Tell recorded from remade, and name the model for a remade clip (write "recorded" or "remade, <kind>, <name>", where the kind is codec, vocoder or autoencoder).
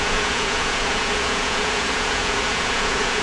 remade, vocoder, Vocos